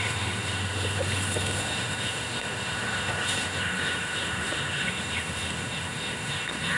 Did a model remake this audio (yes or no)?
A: yes